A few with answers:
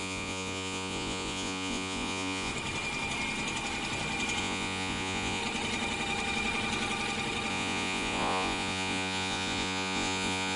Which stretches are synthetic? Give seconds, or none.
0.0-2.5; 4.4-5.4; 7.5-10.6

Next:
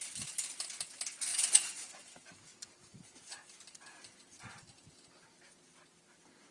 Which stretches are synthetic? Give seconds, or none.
1.3-2.1

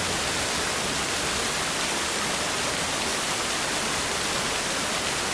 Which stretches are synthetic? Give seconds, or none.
none